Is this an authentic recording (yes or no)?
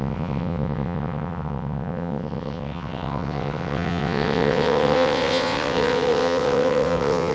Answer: no